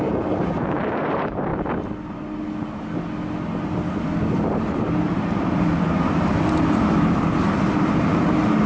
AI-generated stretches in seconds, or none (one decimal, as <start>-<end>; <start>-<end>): 0.0-1.5; 3.9-8.7